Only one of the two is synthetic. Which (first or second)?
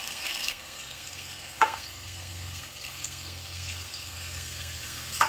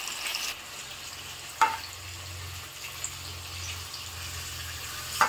first